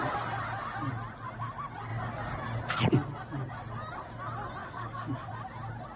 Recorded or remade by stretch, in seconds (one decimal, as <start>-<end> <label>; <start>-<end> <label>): 0.0-4.6 recorded; 4.6-5.3 remade; 5.3-6.0 recorded